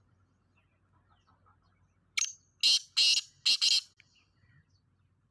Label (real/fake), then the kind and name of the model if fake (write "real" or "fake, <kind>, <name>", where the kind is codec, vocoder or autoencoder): real